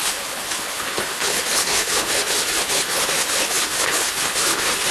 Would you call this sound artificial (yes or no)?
yes